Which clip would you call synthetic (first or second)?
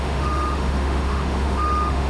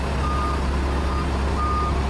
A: first